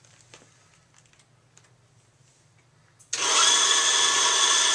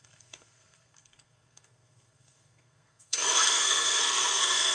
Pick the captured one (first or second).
first